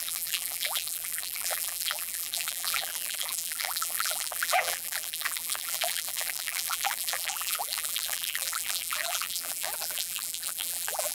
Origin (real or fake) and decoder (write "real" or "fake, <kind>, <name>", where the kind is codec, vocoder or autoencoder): fake, vocoder, BigVGAN v2